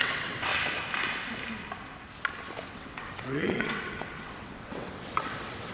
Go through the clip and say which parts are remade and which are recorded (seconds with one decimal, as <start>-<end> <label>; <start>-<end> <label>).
0.0-0.5 remade; 0.5-2.6 recorded; 2.6-5.7 remade